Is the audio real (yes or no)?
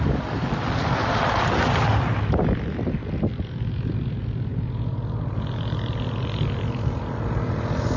yes